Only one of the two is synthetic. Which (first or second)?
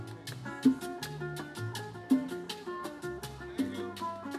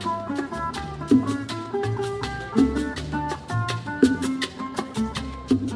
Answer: second